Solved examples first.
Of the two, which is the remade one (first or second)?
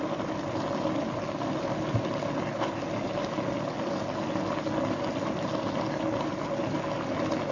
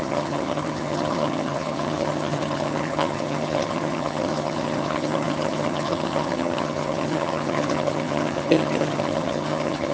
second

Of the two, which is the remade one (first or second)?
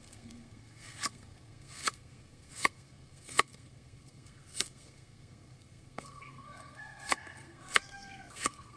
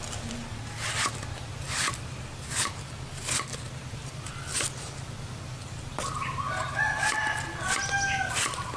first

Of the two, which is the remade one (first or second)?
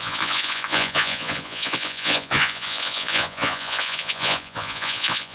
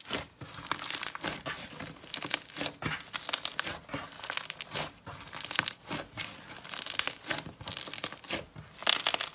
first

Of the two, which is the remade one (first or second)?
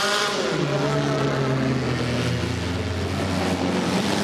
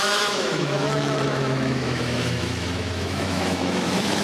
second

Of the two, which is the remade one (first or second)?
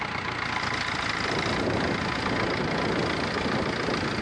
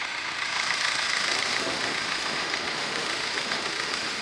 second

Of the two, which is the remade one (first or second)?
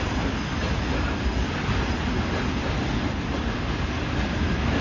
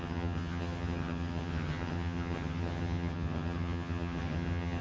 second